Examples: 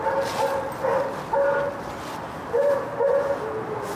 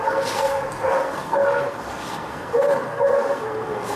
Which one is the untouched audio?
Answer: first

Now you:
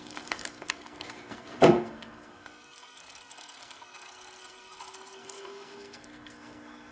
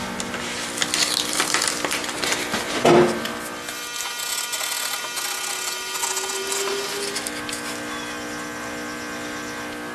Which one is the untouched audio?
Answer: second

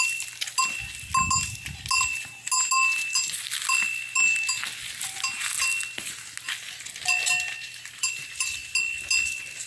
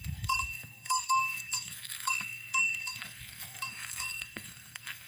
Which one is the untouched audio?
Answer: first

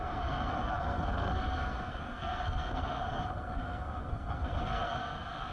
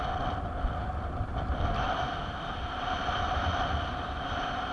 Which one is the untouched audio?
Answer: second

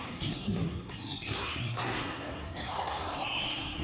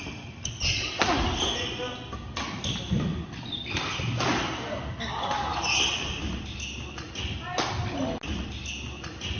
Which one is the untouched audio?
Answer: second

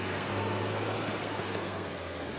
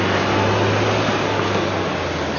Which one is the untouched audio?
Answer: second